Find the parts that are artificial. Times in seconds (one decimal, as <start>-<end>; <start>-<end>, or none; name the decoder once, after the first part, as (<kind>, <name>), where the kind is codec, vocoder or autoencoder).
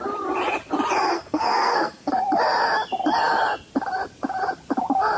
1.1-2.1 (codec, SNAC)